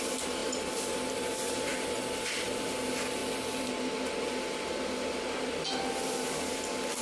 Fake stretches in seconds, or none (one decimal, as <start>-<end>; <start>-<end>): none